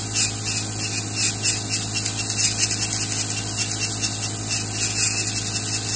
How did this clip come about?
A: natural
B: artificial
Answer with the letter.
A